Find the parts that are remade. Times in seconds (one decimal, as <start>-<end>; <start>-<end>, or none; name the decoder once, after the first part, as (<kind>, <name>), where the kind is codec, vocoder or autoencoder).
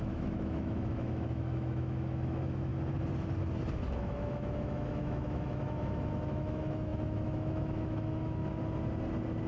0.0-2.7 (autoencoder, DAC-VAE); 3.9-8.4